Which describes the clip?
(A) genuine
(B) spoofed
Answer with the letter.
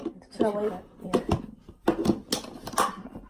A